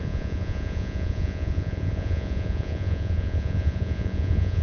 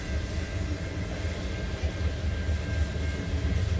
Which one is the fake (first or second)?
first